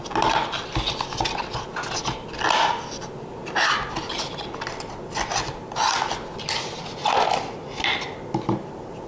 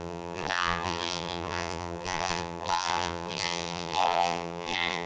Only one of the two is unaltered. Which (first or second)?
first